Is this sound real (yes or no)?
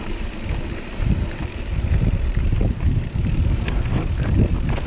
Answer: no